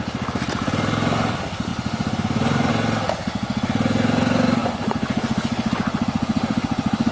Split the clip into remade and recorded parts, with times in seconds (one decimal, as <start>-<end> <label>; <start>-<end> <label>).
0.0-1.7 recorded; 1.7-2.7 remade; 2.7-4.6 recorded; 4.6-7.1 remade

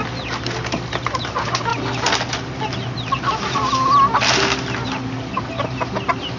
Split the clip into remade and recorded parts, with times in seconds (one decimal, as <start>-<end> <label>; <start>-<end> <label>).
0.0-6.4 recorded

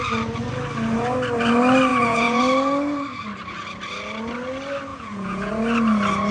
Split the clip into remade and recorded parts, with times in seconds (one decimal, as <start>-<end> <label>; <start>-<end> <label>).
0.0-1.9 recorded; 1.9-2.4 remade; 2.4-4.9 recorded; 4.9-5.5 remade; 5.5-6.3 recorded

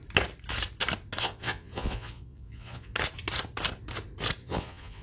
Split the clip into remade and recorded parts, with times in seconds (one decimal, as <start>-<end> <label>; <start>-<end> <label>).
0.0-1.2 recorded; 1.2-2.9 remade; 2.9-4.4 recorded; 4.4-5.0 remade

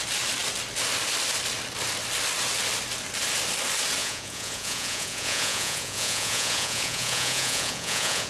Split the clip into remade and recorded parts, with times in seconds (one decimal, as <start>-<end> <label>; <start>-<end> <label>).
0.0-4.0 recorded; 4.0-8.3 remade

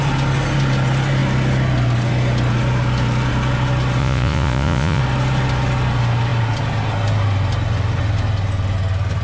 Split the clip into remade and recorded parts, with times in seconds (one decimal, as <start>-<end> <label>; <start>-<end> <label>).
0.0-4.0 recorded; 4.0-5.0 remade; 5.0-9.2 recorded